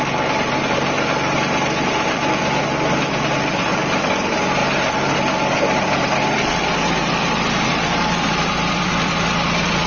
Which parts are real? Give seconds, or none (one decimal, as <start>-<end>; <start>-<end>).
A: 0.0-9.9